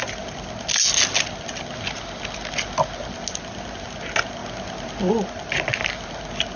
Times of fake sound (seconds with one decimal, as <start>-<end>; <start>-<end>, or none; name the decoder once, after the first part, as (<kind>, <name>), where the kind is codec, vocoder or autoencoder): none